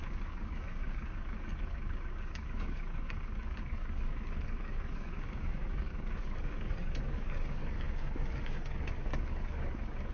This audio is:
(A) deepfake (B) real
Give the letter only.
A